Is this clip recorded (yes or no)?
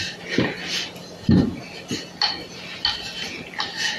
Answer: yes